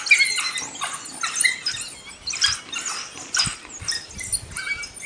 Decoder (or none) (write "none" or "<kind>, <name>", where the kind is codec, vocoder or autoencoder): none